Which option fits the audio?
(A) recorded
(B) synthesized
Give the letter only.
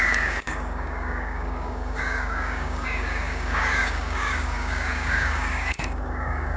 B